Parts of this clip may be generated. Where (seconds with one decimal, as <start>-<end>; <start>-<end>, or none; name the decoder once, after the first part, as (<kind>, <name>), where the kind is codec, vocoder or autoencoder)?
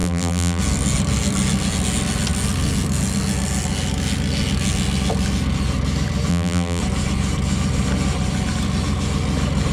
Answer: 0.0-0.6 (vocoder, BigVGAN v2); 6.3-6.8